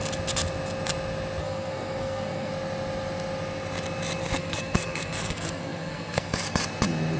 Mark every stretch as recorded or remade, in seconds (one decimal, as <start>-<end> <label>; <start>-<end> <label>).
0.0-1.4 recorded; 1.4-2.5 remade; 2.5-4.2 recorded; 4.2-6.6 remade; 6.6-7.2 recorded